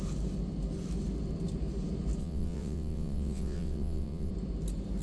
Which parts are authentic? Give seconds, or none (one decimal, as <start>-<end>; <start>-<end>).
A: 0.0-2.2; 4.3-5.0